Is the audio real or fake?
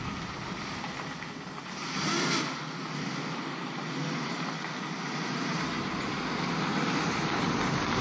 real